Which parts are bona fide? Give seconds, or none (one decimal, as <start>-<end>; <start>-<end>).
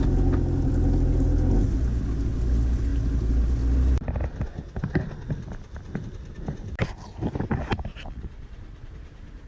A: 0.0-7.9; 8.9-9.5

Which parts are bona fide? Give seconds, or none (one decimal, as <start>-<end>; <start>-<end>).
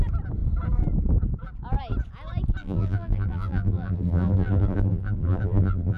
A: 0.0-2.6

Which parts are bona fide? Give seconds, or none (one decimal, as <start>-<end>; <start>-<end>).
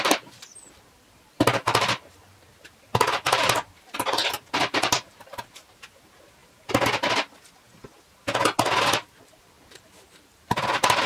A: 6.4-9.2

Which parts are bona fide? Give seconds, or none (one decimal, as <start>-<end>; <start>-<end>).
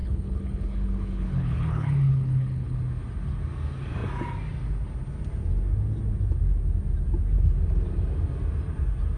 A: 2.8-9.2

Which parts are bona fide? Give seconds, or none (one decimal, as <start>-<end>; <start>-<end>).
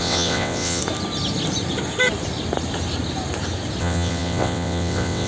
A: 0.8-3.8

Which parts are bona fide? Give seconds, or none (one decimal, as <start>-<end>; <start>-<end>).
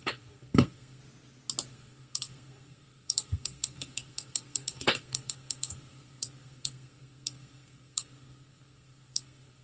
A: 1.0-1.7